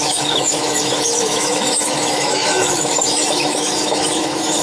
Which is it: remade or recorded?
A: remade